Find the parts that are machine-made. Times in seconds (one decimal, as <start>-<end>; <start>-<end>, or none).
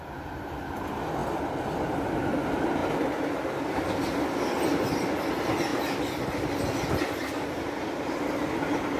none